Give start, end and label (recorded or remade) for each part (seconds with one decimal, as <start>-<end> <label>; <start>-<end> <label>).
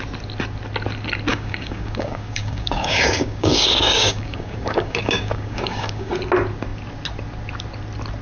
0.0-1.3 recorded; 1.3-6.1 remade; 6.1-8.2 recorded